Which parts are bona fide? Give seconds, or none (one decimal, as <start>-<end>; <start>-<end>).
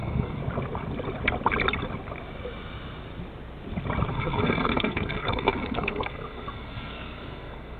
0.4-4.1